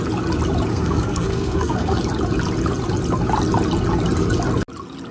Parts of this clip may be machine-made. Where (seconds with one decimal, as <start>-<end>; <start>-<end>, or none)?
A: 0.7-2.0